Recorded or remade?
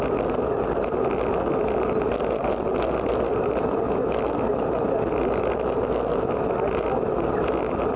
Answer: recorded